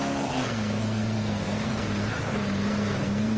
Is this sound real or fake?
fake